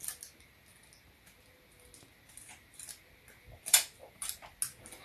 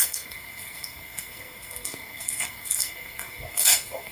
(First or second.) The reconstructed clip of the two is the second